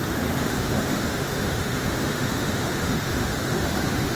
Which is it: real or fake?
fake